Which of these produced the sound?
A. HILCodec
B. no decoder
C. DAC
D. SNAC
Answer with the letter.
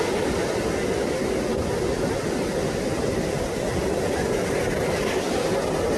B